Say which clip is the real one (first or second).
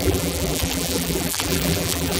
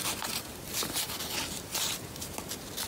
second